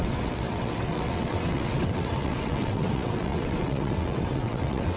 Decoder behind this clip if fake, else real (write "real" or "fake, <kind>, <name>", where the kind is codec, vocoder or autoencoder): fake, vocoder, WaveNeXt